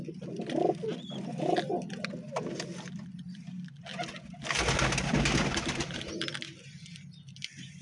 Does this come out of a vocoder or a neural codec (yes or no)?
no